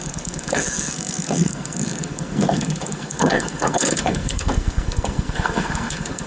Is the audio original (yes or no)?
no